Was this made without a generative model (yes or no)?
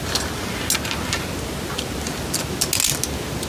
yes